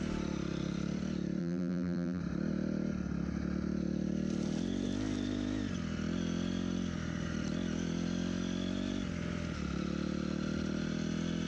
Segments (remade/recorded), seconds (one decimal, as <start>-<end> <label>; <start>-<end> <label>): 0.0-1.4 recorded; 1.4-2.2 remade; 2.2-11.5 recorded